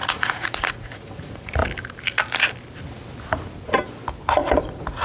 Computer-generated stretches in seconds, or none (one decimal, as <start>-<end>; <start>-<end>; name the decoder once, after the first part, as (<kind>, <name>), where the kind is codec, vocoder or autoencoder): 0.0-1.6 (vocoder, Vocos); 4.6-5.0